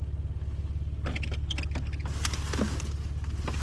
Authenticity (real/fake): real